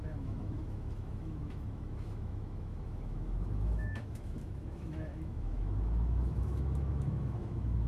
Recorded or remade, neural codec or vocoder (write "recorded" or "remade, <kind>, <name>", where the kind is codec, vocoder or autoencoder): remade, autoencoder, DAC-VAE